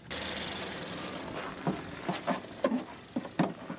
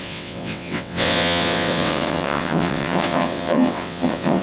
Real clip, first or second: first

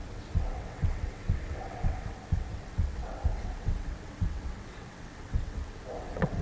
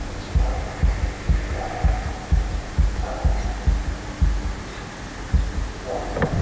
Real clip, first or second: second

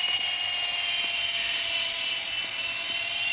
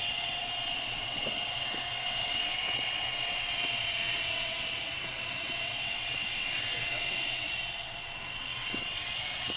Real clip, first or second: first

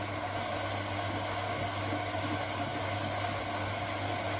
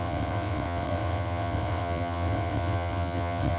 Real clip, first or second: first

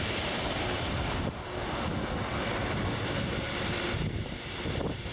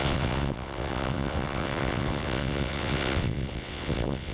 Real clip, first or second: first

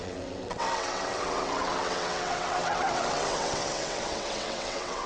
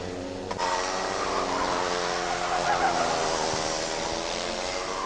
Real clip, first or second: second